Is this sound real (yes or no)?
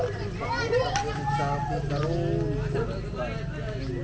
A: yes